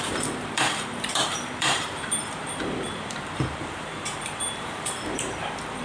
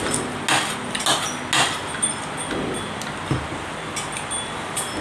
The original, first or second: second